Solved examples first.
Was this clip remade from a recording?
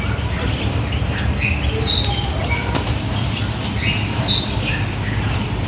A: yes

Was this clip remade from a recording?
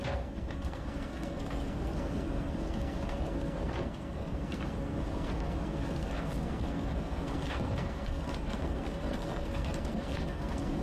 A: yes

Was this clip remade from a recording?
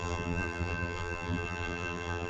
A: yes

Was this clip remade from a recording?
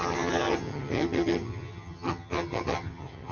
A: yes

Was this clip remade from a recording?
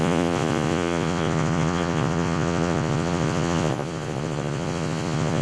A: yes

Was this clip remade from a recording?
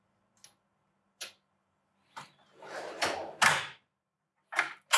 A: no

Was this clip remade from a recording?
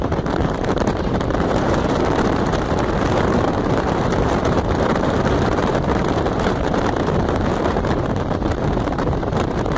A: yes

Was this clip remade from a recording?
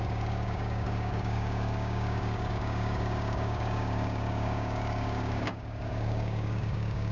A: yes